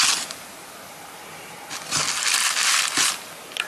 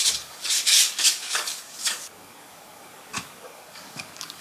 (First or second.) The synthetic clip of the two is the second